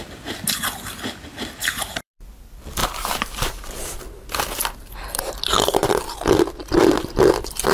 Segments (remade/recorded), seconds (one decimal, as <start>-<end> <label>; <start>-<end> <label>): 0.0-1.6 recorded; 1.6-2.2 remade; 2.2-2.8 recorded; 2.8-4.0 remade; 4.0-7.7 recorded